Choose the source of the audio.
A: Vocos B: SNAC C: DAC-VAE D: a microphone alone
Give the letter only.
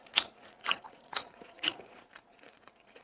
A